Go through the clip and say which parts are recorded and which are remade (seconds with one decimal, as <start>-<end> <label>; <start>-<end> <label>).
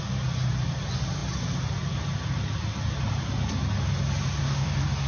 0.0-4.4 recorded; 4.4-5.1 remade